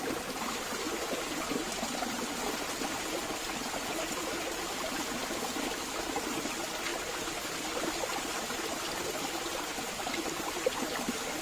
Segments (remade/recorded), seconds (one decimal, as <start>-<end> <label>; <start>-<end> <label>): 0.0-11.4 recorded